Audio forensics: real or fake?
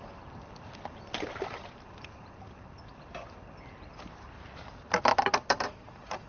real